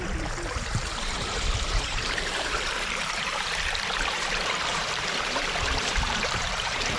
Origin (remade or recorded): remade